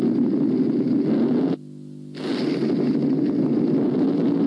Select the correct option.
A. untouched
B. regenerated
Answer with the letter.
A